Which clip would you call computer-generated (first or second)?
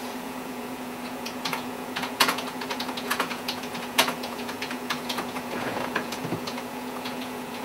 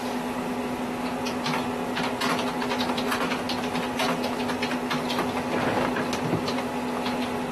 first